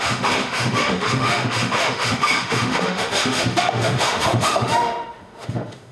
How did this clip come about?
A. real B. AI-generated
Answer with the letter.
B